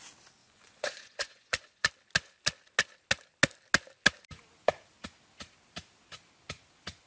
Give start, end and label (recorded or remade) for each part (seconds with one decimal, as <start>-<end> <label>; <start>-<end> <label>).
0.0-0.4 recorded; 0.4-1.9 remade; 1.9-7.1 recorded